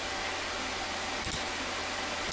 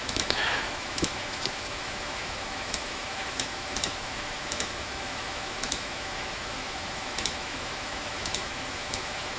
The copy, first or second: second